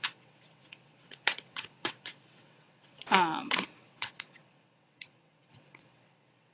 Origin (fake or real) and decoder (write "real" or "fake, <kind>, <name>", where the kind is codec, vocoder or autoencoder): fake, vocoder, WaveNeXt